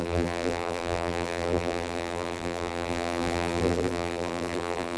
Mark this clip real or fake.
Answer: fake